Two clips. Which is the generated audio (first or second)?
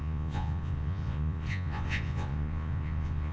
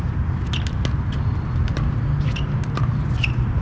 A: first